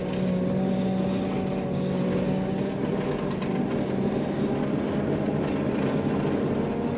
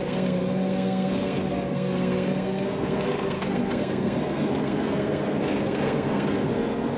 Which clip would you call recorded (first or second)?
first